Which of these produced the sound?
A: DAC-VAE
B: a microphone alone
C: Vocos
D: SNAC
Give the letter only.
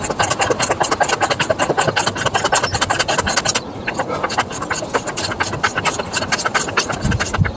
B